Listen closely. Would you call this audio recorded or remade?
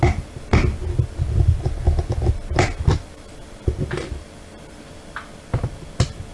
recorded